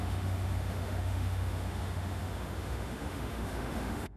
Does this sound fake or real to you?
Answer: fake